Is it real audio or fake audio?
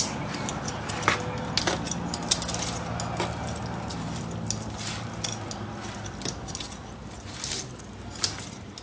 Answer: real